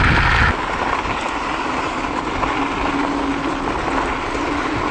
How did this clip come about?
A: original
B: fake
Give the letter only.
A